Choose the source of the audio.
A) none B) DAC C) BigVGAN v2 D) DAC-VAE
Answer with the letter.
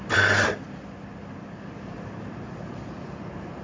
A